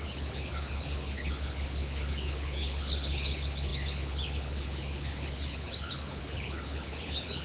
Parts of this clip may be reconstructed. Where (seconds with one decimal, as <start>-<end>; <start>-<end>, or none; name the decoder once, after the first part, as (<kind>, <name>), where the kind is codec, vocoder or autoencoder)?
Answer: 0.0-7.4 (codec, HILCodec)